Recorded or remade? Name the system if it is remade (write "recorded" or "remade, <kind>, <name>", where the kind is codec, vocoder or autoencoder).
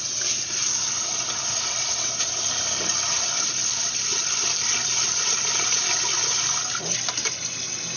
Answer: recorded